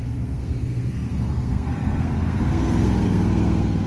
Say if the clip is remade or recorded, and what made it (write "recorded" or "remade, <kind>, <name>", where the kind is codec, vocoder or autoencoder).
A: remade, codec, SNAC